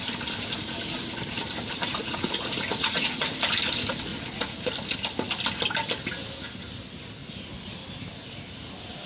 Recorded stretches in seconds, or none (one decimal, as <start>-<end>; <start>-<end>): 0.0-2.0; 3.2-4.1; 4.7-9.1